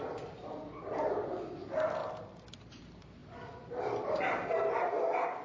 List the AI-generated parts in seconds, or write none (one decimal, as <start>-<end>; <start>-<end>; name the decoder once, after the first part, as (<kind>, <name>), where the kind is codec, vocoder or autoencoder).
2.0-2.8 (vocoder, BigVGAN v2); 3.2-4.6